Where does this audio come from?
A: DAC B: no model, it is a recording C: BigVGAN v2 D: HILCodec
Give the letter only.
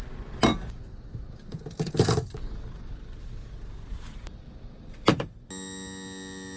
B